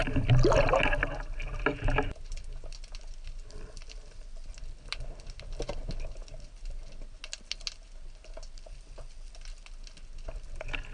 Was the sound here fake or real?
real